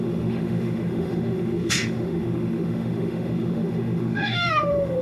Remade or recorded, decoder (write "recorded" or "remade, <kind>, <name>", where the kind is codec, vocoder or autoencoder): remade, autoencoder, DAC-VAE